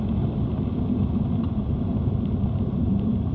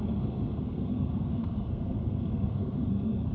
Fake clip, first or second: second